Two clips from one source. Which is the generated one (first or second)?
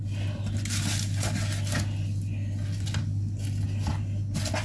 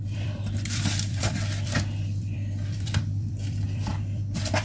second